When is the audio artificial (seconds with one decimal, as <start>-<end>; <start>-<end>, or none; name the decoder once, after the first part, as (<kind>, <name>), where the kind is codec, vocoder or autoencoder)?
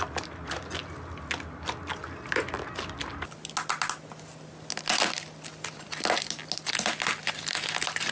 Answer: none